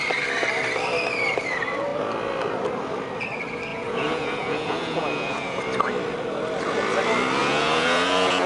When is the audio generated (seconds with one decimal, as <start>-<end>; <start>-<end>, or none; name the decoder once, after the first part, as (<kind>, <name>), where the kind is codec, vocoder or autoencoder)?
3.7-5.6 (vocoder, Vocos); 7.4-8.5